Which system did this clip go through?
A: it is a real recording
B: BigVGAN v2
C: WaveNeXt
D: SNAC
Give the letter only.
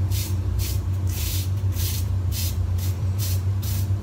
B